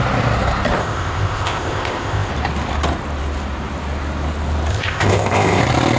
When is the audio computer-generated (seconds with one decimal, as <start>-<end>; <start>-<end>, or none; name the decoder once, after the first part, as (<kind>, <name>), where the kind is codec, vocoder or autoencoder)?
0.8-2.3 (codec, ZipCodec); 4.7-5.6